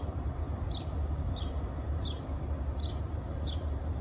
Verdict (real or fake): real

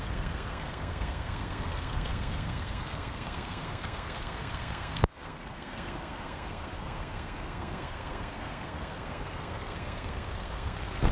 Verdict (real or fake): fake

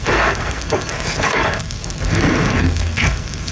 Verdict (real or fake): fake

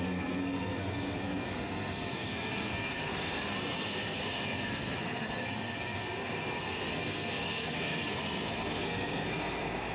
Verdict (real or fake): fake